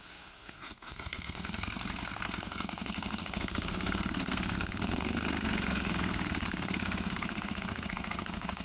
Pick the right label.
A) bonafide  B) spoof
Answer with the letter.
B